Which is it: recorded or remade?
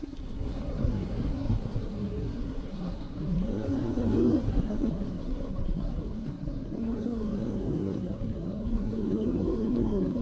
remade